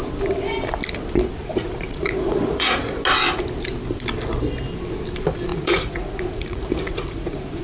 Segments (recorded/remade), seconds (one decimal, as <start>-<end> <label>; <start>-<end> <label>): 0.0-1.4 recorded; 1.4-3.0 remade; 3.0-5.5 recorded; 5.5-7.6 remade